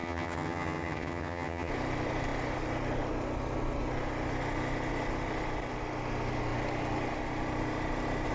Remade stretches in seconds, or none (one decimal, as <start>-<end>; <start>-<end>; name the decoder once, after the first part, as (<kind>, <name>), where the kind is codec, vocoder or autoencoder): 0.0-1.7 (vocoder, HiFi-GAN)